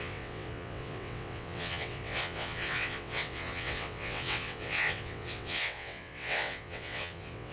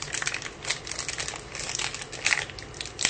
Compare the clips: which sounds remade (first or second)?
first